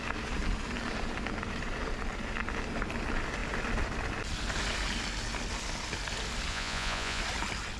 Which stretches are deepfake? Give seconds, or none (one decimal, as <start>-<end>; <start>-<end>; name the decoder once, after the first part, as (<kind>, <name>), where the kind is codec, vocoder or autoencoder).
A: 6.5-7.2 (vocoder, Vocos)

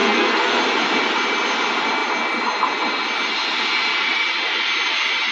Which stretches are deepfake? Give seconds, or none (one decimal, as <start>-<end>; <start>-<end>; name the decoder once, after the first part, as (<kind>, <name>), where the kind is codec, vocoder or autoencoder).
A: 0.0-0.6 (codec, SNAC)

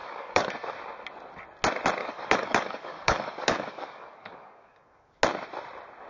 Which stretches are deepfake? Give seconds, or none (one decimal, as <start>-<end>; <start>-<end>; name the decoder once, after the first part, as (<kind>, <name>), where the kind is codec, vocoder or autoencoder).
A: 0.0-0.5 (codec, DAC); 2.0-5.2